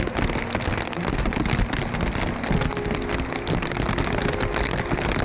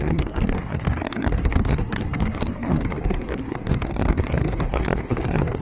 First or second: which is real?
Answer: first